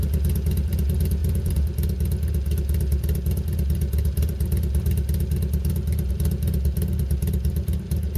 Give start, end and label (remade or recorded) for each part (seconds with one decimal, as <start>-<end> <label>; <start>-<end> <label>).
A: 0.0-8.2 recorded